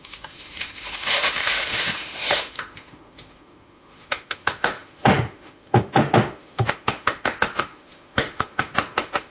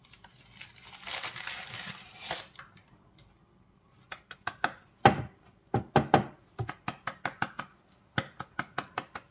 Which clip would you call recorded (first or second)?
second